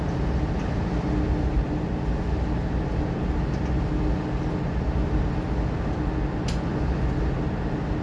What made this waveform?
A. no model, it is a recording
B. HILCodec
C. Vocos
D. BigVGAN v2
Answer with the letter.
A